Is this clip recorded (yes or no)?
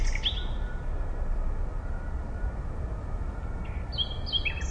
yes